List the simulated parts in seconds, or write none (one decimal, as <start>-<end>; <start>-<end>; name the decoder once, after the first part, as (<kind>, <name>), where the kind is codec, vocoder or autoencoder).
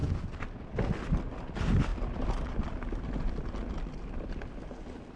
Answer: none